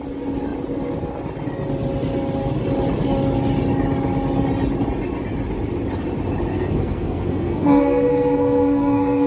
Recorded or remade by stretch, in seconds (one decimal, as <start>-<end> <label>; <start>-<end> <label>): 0.0-6.5 recorded; 6.5-9.3 remade